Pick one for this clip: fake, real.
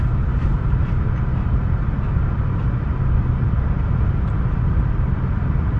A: fake